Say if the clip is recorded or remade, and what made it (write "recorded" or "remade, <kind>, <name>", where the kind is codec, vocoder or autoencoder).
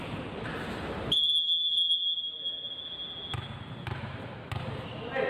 recorded